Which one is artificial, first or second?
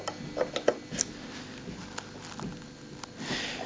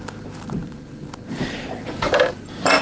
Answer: second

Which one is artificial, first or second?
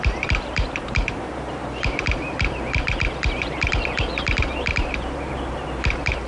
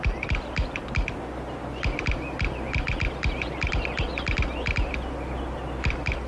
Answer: first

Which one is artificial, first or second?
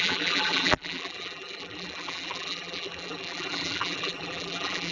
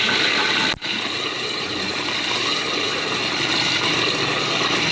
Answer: first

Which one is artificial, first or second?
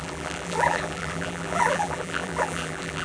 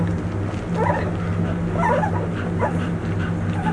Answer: first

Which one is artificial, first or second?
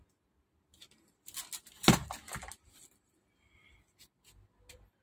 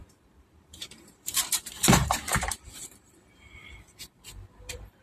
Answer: second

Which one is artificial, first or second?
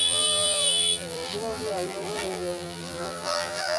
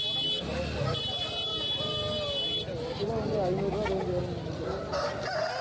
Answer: first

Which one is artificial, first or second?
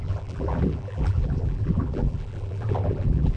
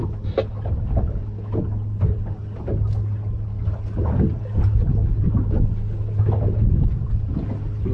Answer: first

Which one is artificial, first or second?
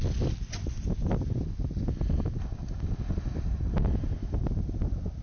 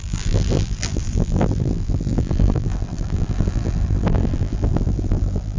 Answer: second